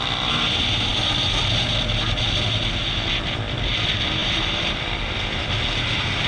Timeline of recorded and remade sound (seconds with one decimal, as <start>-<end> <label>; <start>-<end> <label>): 0.0-6.3 recorded